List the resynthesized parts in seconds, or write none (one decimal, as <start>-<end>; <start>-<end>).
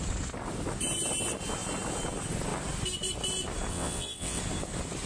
3.7-4.4